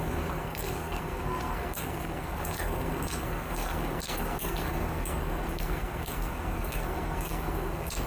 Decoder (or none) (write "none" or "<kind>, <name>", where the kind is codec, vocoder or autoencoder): codec, SNAC